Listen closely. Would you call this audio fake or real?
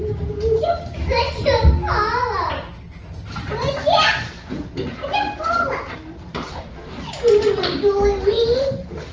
real